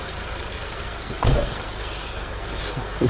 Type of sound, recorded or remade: remade